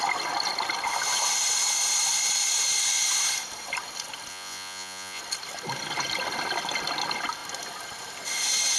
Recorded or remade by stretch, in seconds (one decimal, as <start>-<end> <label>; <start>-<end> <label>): 0.0-4.3 recorded; 4.3-5.2 remade; 5.2-8.8 recorded